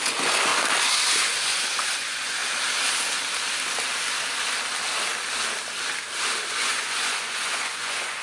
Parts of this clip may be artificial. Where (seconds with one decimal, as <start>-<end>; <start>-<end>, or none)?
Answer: 0.0-0.5; 1.2-2.4; 6.5-8.2